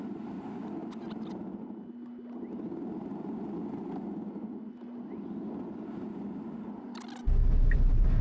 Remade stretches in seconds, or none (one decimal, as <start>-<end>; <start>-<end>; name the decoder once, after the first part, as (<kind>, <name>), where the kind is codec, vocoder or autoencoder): none